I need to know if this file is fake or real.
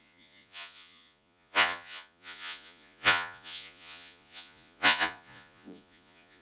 fake